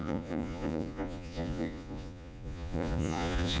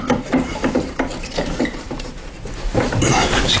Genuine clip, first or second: second